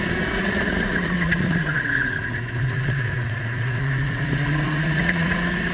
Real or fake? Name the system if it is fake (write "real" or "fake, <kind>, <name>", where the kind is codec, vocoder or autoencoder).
fake, vocoder, Vocos